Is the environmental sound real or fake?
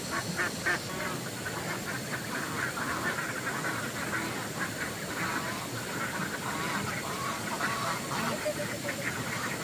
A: real